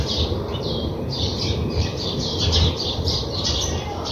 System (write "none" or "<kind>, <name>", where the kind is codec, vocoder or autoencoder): vocoder, BigVGAN v2